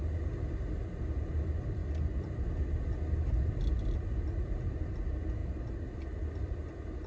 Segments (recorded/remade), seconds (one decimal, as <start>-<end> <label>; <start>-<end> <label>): 0.0-7.1 recorded